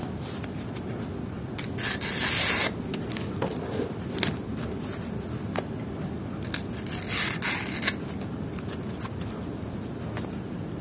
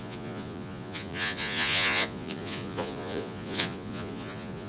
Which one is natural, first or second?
first